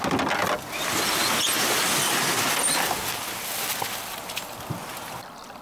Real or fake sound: real